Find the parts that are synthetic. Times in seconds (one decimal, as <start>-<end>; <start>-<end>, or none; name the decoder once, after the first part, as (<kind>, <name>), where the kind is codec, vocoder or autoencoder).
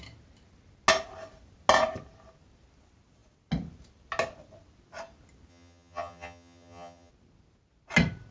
5.5-7.1 (vocoder, HiFi-GAN)